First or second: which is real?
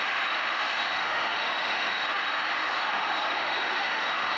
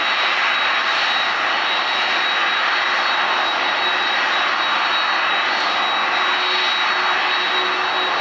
second